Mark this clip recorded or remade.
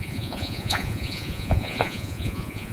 remade